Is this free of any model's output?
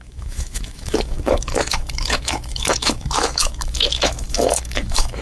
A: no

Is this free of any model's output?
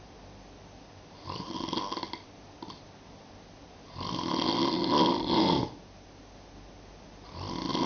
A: yes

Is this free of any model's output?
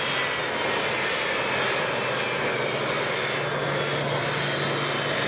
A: yes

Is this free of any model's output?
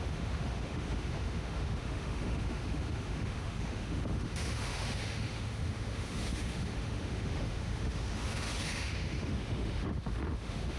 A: no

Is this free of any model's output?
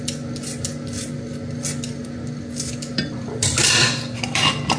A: yes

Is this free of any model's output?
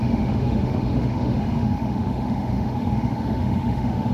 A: no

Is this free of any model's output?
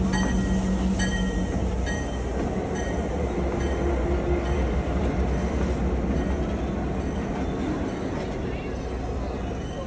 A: yes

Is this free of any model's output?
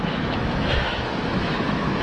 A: no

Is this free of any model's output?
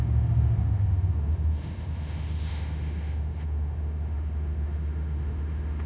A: no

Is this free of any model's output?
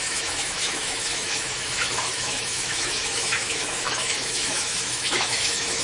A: no